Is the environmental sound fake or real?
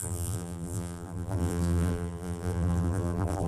fake